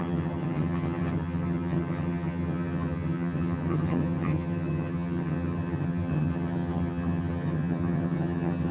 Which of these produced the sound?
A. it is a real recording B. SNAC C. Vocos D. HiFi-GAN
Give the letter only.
D